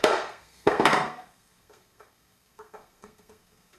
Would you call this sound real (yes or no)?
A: no